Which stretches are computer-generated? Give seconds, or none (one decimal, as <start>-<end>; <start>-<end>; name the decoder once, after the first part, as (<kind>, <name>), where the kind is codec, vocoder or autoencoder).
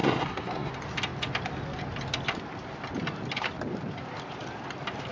0.0-0.7 (codec, SNAC)